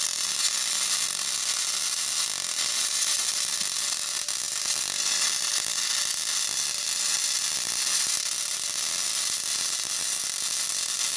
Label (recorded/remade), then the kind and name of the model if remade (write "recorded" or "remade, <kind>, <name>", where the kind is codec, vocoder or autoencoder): recorded